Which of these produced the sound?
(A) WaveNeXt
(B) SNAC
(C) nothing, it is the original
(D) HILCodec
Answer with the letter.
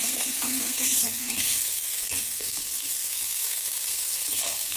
B